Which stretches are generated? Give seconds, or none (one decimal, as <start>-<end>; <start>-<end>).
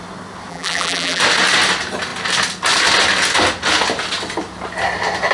0.5-1.2